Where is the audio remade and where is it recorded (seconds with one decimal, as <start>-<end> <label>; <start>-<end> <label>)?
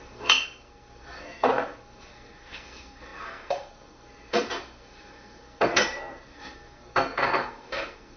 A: 0.0-8.2 remade